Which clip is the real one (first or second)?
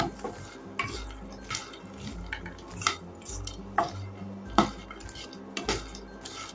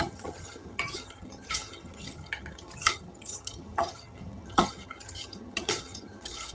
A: first